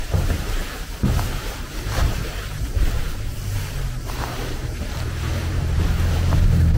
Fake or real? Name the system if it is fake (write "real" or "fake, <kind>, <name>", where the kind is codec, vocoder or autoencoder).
fake, vocoder, BigVGAN v2